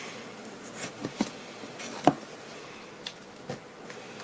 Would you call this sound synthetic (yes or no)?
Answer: no